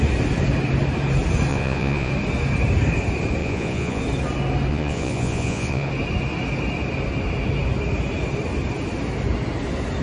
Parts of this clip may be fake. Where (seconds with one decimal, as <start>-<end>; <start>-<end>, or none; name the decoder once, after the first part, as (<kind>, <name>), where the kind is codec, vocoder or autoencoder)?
1.5-2.1 (vocoder, Vocos); 3.4-4.0; 4.7-5.9

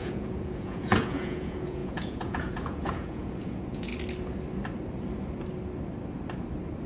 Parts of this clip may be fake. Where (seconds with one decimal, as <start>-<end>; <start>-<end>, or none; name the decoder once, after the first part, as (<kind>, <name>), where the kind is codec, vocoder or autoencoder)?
0.0-3.9 (vocoder, Vocos)

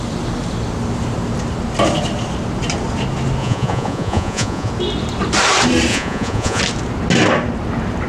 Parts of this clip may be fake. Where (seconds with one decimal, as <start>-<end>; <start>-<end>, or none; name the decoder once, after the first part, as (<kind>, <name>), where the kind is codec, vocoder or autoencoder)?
3.4-4.7 (vocoder, Vocos); 5.9-6.6

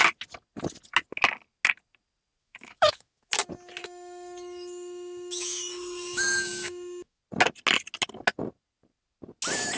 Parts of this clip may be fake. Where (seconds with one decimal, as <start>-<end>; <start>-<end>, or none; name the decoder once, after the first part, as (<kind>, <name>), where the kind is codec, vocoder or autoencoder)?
2.4-3.3 (autoencoder, DAC-VAE); 3.8-7.2

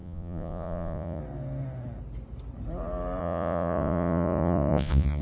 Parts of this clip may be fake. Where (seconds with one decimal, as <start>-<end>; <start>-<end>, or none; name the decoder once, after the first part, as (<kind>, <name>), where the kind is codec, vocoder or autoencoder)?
0.0-1.2 (vocoder, Vocos); 3.2-5.2

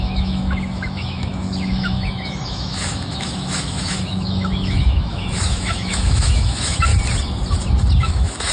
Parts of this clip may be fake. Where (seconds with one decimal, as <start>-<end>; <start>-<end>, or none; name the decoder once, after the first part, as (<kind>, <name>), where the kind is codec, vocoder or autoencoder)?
0.0-6.9 (autoencoder, DAC-VAE); 8.0-8.5

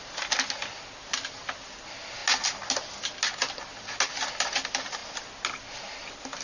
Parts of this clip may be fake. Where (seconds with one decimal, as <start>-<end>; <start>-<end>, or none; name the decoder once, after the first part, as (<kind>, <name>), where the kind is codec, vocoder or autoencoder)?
none